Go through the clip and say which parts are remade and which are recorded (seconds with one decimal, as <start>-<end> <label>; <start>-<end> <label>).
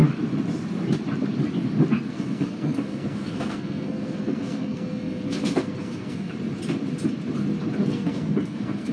0.0-2.1 recorded; 2.1-6.3 remade; 6.3-7.9 recorded; 7.9-8.9 remade